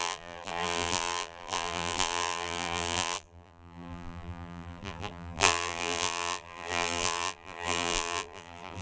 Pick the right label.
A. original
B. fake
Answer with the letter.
B